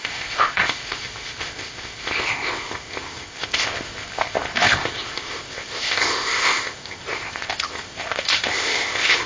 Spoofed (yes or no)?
yes